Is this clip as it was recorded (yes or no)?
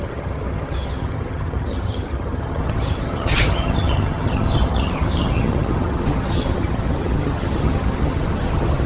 no